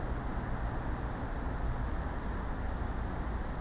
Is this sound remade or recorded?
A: recorded